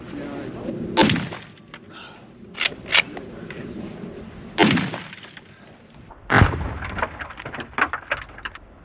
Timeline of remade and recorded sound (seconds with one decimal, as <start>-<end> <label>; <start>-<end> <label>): 0.0-8.8 recorded